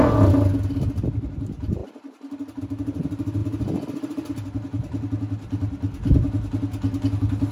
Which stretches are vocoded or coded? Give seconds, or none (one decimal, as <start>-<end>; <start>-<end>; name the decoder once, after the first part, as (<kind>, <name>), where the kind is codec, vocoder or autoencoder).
none